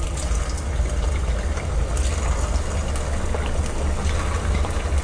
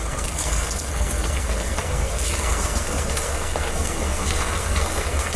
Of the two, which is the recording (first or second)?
first